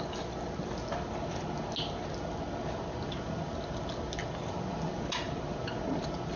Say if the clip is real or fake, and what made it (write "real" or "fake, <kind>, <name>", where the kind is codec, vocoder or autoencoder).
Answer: real